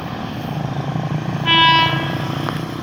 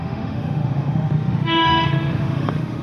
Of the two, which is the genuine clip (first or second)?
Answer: first